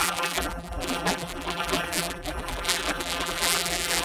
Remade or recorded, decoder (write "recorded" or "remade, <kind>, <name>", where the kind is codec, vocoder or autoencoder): remade, vocoder, BigVGAN v2